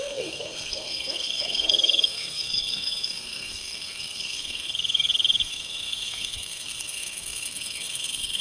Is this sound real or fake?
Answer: fake